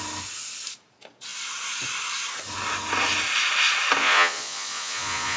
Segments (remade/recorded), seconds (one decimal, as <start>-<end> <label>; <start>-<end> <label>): 0.0-4.0 recorded; 4.0-5.4 remade